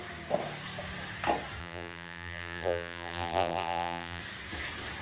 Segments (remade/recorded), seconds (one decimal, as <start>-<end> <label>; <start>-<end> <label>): 0.0-1.6 recorded; 1.6-4.2 remade; 4.2-5.0 recorded